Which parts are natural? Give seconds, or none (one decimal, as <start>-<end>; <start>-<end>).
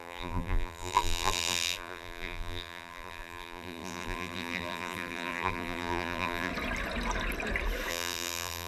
6.5-7.9